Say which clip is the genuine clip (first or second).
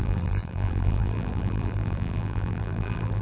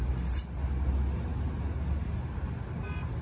second